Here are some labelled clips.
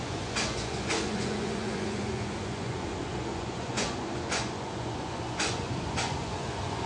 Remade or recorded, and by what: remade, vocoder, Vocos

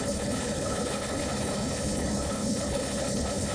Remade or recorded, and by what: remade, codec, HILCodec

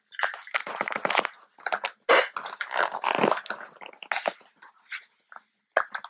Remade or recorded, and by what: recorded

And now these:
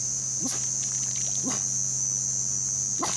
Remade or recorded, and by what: recorded